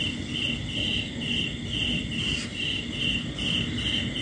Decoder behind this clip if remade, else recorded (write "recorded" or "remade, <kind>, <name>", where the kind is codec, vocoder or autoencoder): recorded